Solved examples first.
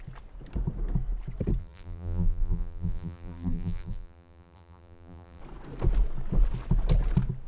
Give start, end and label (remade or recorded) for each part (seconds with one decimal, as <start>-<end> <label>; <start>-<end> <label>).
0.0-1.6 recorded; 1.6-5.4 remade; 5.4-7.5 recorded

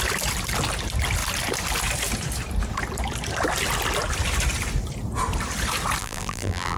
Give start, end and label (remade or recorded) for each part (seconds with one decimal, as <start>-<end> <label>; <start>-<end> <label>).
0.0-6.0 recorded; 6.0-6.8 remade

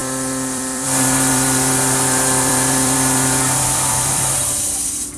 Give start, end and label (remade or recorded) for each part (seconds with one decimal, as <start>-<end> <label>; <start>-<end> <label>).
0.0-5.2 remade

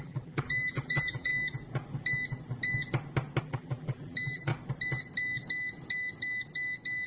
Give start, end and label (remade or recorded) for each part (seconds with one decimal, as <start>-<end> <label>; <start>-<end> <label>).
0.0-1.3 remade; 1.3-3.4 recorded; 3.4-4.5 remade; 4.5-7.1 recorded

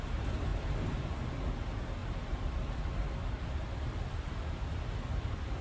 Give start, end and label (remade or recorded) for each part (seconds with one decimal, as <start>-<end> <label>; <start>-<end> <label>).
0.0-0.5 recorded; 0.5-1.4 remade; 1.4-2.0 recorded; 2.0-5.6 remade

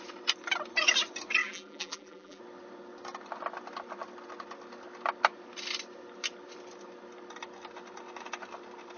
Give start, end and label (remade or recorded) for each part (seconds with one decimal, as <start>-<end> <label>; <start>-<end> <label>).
0.0-1.4 recorded; 1.4-2.4 remade; 2.4-9.0 recorded

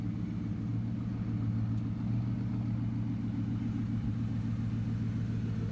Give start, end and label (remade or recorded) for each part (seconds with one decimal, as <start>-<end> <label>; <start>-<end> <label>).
0.0-5.7 recorded